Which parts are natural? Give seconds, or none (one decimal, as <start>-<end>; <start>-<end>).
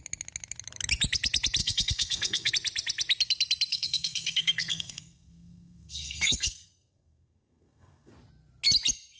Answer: 0.0-1.6; 2.5-3.7; 8.1-9.2